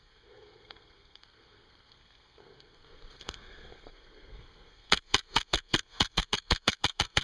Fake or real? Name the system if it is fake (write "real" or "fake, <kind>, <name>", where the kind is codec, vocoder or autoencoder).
fake, codec, SNAC